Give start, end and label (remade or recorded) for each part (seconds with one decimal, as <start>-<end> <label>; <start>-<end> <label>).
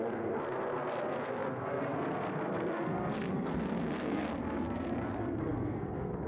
0.0-6.3 remade